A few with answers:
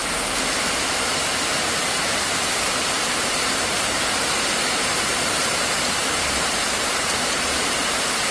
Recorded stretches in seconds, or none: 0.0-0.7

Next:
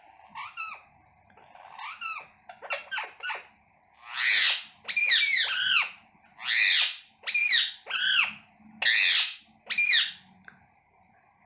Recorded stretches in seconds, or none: 0.0-11.5